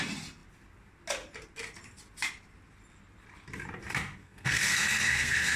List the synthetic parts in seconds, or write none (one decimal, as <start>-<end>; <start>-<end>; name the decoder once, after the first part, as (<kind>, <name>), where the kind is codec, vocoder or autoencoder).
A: 4.2-5.6 (codec, SNAC)